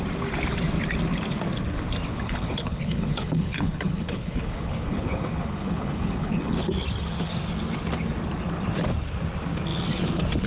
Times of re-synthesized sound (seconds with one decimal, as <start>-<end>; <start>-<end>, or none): 2.1-6.6